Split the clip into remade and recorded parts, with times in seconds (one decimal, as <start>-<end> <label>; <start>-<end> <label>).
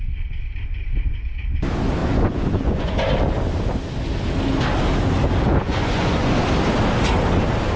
0.0-2.0 recorded; 2.0-2.9 remade; 2.9-5.5 recorded; 5.5-6.3 remade; 6.3-7.8 recorded